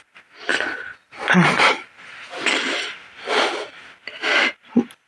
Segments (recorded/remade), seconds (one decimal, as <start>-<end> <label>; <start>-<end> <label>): 0.0-5.1 recorded